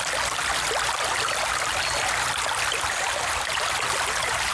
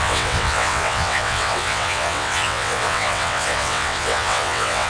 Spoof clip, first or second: second